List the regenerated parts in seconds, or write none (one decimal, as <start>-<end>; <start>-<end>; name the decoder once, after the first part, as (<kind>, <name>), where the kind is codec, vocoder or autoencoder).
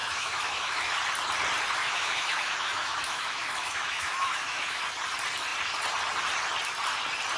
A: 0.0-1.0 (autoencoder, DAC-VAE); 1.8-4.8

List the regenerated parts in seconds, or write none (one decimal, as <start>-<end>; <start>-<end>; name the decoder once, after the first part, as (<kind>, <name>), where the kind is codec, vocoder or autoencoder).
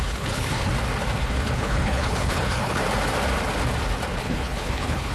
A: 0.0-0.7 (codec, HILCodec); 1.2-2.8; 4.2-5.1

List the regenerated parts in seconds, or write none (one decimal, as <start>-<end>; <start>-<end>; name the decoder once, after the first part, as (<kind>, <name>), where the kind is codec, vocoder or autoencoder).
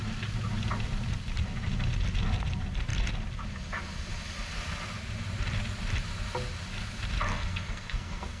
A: 7.3-8.4 (codec, SNAC)